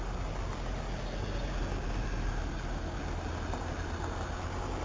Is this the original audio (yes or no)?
yes